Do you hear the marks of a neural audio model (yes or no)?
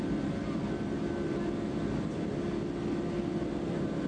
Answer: no